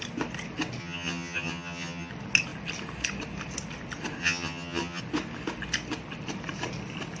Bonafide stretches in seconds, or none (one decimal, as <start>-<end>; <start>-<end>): 0.0-0.8; 2.1-4.2; 5.0-7.2

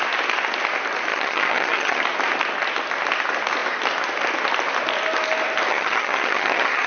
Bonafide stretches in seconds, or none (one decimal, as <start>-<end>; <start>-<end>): 0.0-1.1; 2.0-5.7

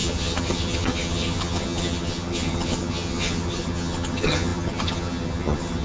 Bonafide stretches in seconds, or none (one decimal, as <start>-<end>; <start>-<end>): none

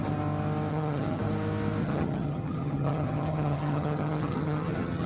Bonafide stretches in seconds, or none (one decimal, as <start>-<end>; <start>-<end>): 0.0-0.7; 1.2-1.8

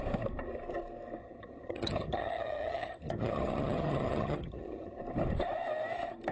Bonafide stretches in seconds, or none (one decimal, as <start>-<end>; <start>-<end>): 0.0-1.2; 5.0-6.3

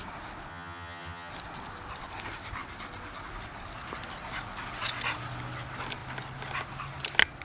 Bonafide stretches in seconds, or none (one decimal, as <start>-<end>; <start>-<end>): 0.0-0.5; 1.3-7.4

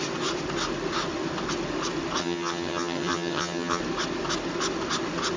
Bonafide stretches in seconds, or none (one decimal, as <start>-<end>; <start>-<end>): 0.0-2.2; 3.8-5.4

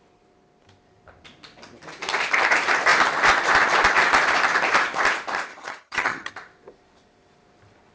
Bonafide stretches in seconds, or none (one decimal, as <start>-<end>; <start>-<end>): 0.0-5.5; 6.3-7.9